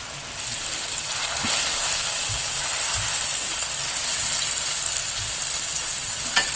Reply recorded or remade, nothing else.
recorded